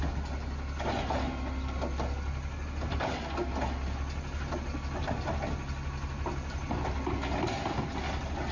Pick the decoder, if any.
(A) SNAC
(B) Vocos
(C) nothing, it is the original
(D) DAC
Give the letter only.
C